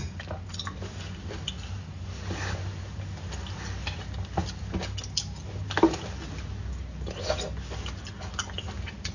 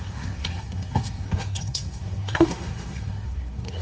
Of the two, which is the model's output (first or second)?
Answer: second